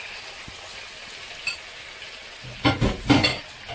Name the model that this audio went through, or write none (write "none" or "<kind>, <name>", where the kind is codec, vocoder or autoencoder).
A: none